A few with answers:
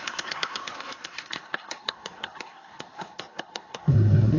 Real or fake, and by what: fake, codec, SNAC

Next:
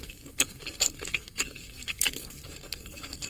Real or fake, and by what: fake, codec, SNAC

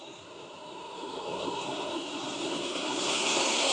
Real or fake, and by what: fake, codec, SNAC